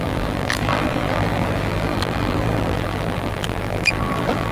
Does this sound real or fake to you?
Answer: fake